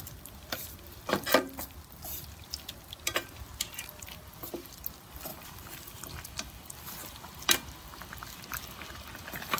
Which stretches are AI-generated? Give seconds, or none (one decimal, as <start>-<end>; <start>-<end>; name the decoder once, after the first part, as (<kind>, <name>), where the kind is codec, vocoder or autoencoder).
5.3-6.0 (vocoder, BigVGAN v2)